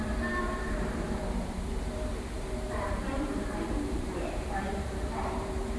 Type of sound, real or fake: fake